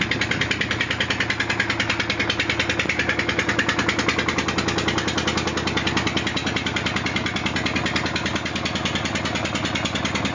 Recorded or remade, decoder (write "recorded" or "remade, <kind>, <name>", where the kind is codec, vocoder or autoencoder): recorded